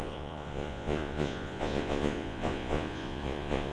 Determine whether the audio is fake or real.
fake